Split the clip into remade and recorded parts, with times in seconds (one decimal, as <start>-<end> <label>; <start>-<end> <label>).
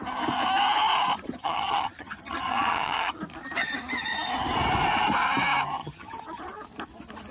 0.0-1.4 recorded; 1.4-3.2 remade; 3.2-5.8 recorded; 5.8-6.4 remade; 6.4-7.3 recorded